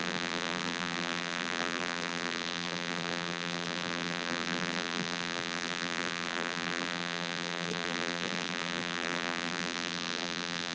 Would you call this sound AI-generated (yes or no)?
yes